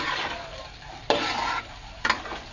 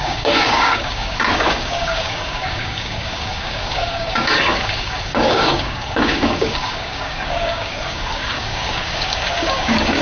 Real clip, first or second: first